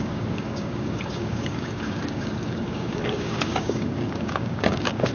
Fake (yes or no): yes